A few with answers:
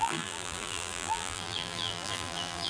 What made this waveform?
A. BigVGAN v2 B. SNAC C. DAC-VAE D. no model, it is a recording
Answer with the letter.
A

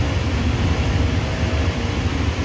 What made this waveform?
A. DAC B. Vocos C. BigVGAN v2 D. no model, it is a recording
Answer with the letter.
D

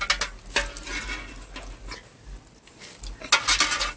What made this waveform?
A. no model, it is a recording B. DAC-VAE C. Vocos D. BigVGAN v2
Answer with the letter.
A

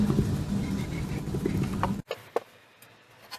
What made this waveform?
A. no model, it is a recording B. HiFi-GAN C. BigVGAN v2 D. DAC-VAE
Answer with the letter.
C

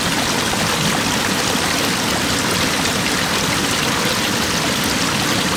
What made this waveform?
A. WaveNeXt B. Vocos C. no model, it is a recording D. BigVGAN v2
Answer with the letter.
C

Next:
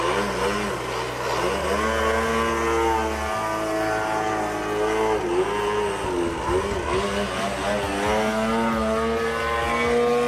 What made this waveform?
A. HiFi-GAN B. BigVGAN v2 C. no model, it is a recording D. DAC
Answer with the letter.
C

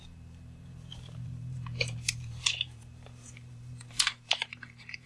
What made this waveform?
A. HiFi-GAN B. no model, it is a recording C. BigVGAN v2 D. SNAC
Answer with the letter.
C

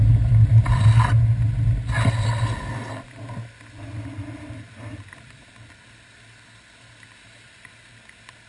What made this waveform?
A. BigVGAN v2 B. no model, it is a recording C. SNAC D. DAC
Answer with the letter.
B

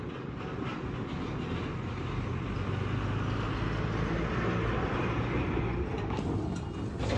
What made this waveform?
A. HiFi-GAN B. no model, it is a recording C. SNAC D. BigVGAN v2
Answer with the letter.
B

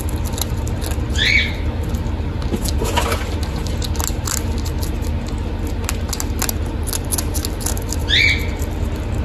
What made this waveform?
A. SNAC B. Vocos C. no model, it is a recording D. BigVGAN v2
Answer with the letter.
C